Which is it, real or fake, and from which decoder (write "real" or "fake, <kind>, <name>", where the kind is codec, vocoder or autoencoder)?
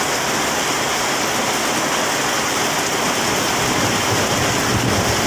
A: real